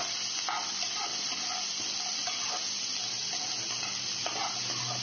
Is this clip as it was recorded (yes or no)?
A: yes